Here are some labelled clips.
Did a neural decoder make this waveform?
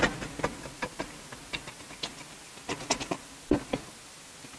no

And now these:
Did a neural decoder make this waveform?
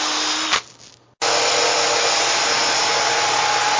no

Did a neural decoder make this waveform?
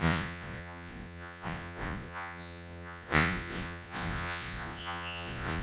yes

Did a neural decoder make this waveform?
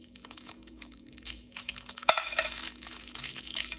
yes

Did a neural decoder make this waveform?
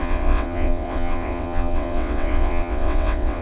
yes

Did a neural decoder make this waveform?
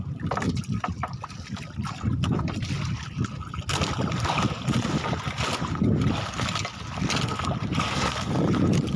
no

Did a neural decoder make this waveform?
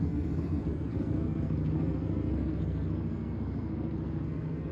yes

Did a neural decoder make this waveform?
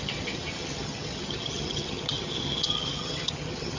yes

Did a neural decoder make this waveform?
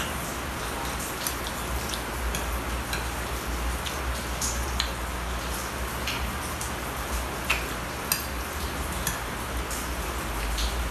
no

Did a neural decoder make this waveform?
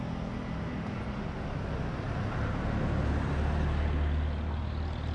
no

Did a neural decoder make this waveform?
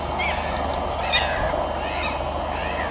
no